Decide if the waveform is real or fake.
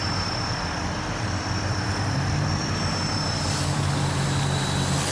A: real